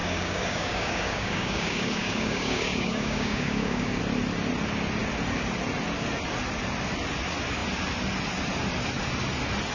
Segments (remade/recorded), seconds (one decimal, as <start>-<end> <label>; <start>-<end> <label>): 0.0-4.0 remade; 4.0-9.7 recorded